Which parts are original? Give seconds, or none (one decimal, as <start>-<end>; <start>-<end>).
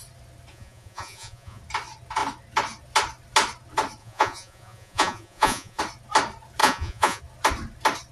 0.0-0.5; 1.6-4.0; 5.8-6.6; 7.2-8.1